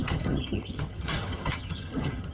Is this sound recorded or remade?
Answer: remade